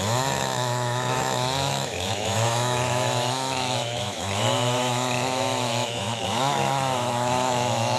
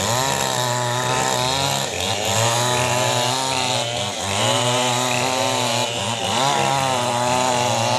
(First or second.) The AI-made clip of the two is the first